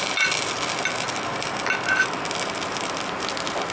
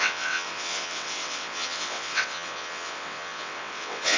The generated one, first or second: second